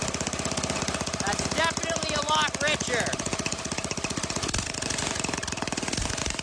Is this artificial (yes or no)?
no